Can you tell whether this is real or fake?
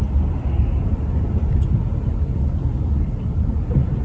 real